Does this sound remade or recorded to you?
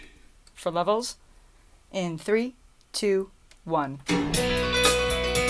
recorded